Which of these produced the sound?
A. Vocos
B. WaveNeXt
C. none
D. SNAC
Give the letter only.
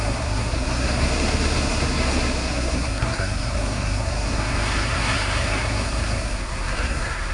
D